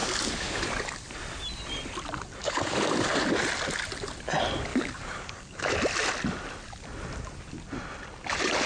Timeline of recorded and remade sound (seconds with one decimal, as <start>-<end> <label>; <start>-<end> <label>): 0.0-0.6 remade; 0.6-2.4 recorded; 2.4-3.1 remade; 3.1-4.7 recorded; 4.7-5.7 remade; 5.7-8.7 recorded